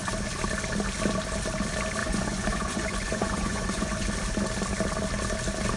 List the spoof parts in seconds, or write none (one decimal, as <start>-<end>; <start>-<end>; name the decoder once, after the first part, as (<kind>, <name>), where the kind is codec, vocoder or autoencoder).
2.0-4.1 (vocoder, Vocos)